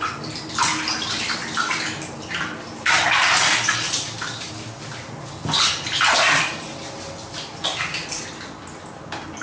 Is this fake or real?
real